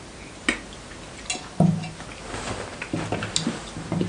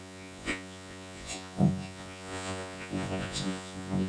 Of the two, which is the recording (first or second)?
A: first